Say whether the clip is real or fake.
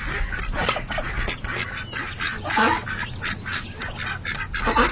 real